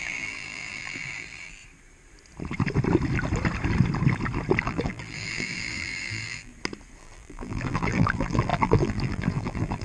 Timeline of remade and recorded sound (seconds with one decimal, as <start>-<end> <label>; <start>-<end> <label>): 0.0-1.6 remade; 1.6-4.6 recorded; 4.6-6.5 remade; 6.5-7.0 recorded; 7.0-9.8 remade